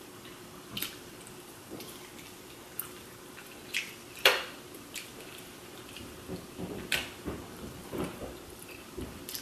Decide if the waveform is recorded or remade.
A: remade